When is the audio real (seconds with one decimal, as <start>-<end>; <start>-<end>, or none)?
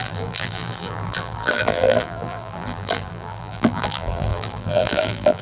none